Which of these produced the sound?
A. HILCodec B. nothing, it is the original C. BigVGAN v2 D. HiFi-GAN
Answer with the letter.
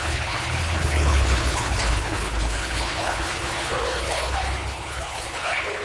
A